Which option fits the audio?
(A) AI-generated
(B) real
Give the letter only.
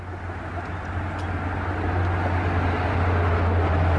B